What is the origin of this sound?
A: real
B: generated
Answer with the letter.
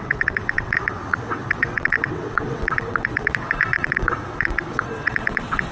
B